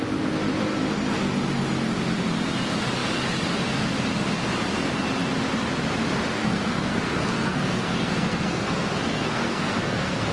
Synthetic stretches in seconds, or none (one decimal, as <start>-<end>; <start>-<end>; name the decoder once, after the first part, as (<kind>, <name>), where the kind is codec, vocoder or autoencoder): 6.4-10.3 (codec, SNAC)